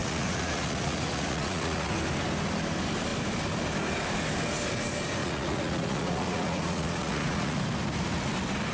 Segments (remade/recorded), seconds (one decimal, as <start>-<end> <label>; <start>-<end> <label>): 0.0-1.9 remade; 1.9-5.2 recorded; 5.2-7.6 remade; 7.6-8.7 recorded